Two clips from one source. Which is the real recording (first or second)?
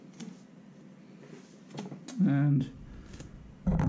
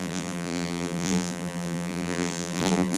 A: first